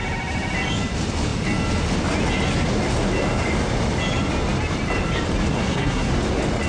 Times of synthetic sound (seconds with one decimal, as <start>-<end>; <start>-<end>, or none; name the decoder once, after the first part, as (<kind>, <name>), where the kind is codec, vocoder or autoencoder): 5.5-6.1 (codec, SNAC)